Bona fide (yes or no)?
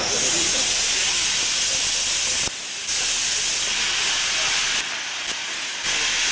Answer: yes